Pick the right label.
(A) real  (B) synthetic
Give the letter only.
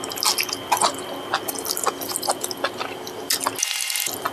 A